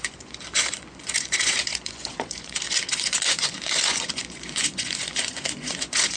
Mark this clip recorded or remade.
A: remade